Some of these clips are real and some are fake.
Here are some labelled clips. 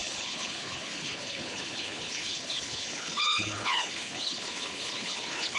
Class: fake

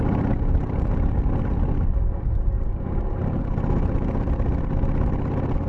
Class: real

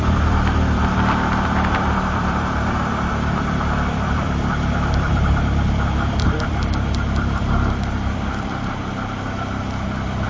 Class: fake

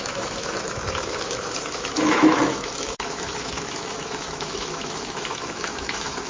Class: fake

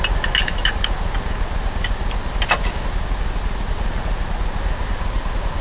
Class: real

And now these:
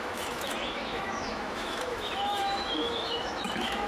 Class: fake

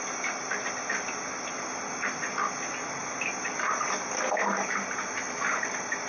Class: real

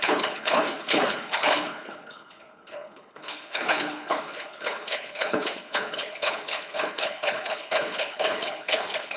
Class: fake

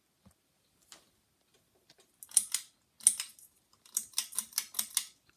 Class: real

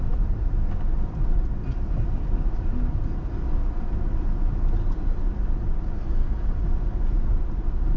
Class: real